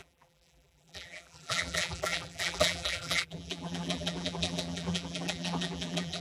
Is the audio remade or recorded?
remade